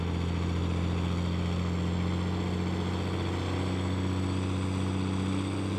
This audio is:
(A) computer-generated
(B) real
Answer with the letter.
B